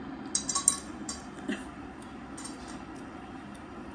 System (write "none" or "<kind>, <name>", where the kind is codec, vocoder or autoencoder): none